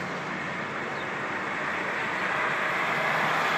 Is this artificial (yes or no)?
no